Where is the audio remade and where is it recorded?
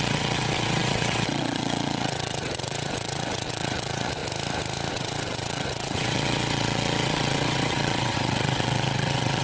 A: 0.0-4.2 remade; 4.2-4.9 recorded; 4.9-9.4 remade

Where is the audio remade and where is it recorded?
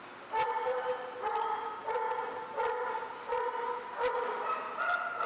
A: 0.0-5.3 recorded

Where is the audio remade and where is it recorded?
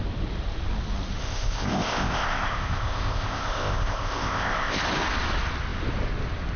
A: 0.0-1.2 recorded; 1.2-4.8 remade; 4.8-6.6 recorded